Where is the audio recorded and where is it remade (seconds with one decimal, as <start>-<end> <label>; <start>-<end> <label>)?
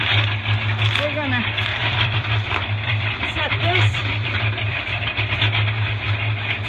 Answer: 0.0-1.7 recorded; 1.7-5.4 remade; 5.4-6.7 recorded